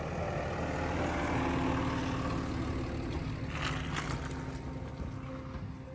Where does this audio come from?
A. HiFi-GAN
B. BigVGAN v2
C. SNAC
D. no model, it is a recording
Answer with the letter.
D